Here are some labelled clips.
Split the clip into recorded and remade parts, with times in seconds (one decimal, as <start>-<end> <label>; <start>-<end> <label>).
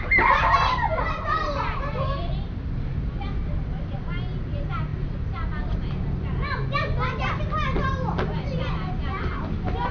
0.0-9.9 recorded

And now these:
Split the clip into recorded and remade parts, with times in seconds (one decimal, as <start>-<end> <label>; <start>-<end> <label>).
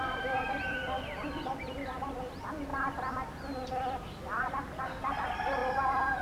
0.0-2.7 remade; 2.7-4.4 recorded; 4.4-6.2 remade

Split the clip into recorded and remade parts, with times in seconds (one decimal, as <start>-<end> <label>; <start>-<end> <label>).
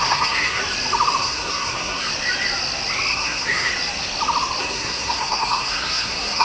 0.0-0.6 remade; 0.6-1.2 recorded; 1.2-2.1 remade; 2.1-3.1 recorded; 3.1-3.7 remade; 3.7-4.6 recorded; 4.6-6.4 remade